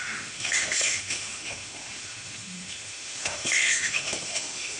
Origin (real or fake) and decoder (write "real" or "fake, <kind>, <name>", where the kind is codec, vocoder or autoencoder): fake, autoencoder, DAC-VAE